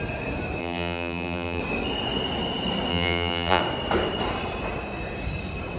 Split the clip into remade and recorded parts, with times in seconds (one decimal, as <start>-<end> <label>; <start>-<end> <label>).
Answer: 0.0-0.6 recorded; 0.6-1.6 remade; 1.6-2.9 recorded; 2.9-3.6 remade; 3.6-5.8 recorded